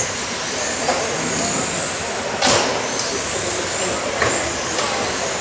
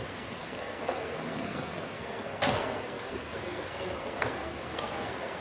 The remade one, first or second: second